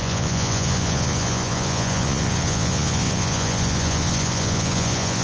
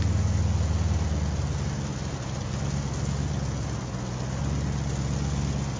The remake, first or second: first